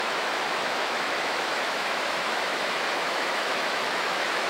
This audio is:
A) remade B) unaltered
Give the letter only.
A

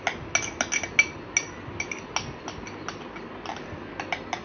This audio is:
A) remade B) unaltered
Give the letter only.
B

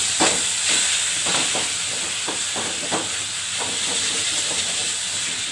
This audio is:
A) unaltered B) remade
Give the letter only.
A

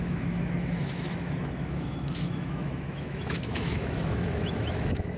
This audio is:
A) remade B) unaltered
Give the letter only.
A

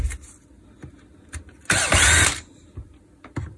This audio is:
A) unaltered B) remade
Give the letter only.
A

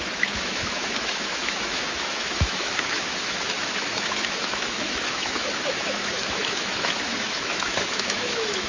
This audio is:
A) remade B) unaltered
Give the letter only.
A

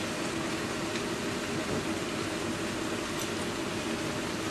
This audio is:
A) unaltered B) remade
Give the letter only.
A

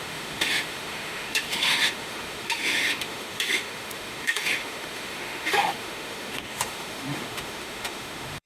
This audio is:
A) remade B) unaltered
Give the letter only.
A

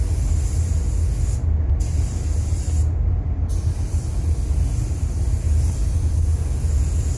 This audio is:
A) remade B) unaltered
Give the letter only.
B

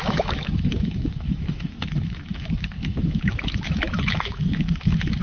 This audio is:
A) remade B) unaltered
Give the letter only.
A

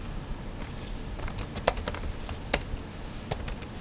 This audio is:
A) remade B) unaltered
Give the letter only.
B